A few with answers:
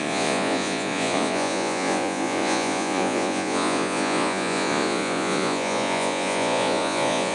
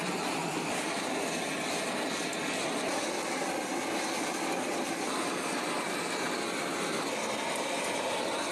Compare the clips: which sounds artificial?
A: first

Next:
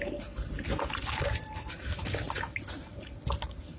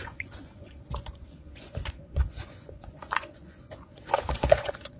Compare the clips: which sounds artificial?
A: second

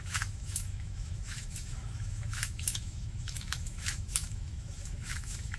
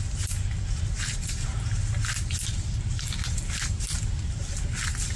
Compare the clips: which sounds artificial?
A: first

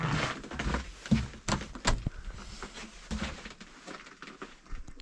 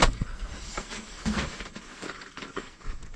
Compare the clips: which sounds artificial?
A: second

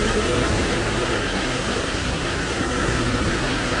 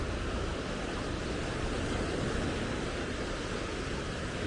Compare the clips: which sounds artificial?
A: first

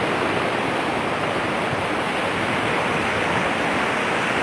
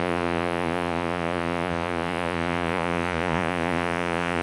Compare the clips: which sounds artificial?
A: second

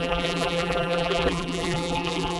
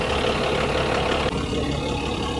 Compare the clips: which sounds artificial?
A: first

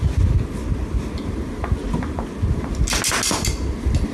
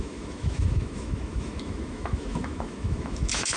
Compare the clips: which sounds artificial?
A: second